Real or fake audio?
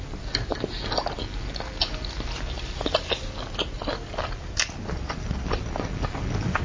real